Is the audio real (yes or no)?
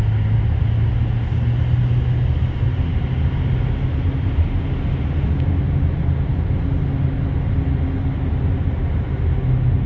yes